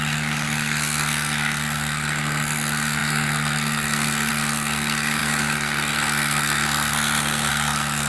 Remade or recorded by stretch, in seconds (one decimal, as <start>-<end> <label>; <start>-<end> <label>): 0.0-8.1 remade